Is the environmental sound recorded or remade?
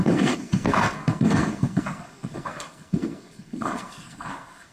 remade